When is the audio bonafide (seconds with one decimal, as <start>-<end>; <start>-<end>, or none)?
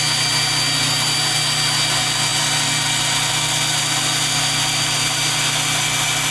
0.0-6.3